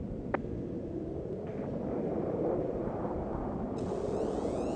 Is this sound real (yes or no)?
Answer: yes